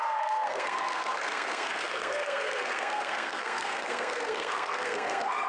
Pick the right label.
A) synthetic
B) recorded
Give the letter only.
A